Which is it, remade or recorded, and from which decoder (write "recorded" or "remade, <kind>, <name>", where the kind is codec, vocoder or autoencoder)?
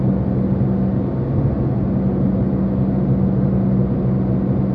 recorded